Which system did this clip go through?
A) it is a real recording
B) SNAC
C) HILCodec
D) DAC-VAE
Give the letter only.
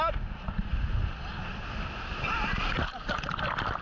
A